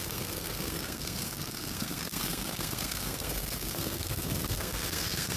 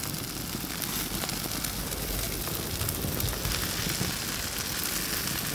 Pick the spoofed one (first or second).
first